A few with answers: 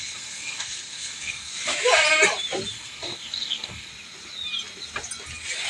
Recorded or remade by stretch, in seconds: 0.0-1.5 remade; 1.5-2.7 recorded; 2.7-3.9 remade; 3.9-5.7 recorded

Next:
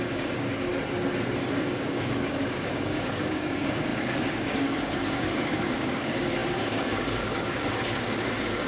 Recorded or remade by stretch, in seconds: 0.0-0.7 remade; 0.7-1.5 recorded; 1.5-8.7 remade